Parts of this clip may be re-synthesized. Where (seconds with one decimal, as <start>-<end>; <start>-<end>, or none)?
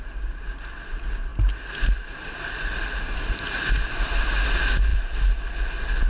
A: none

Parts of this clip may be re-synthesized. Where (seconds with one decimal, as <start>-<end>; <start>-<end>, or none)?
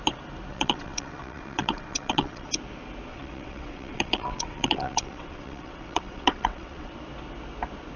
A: 0.5-2.5; 3.1-6.9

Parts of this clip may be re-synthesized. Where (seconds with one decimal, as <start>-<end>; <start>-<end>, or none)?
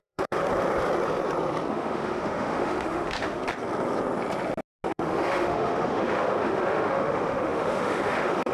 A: 0.0-0.5; 1.7-3.4; 4.9-8.5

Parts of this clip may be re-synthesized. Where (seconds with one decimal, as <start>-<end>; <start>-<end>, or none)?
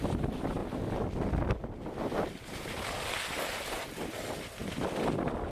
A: none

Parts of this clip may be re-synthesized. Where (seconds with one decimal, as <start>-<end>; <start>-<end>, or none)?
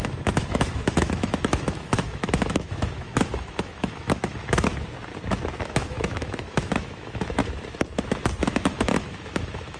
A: 0.0-4.7; 5.5-7.4; 8.4-9.8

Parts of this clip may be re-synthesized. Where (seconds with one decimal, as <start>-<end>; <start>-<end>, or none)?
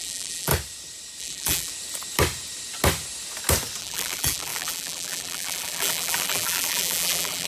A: 0.0-0.5; 1.2-1.7; 3.8-7.5